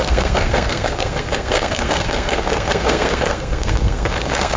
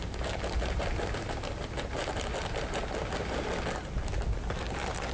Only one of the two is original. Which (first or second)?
second